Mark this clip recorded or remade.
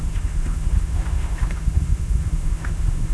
remade